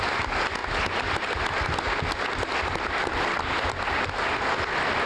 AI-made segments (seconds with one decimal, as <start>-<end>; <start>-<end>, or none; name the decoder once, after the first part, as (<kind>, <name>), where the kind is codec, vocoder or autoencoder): none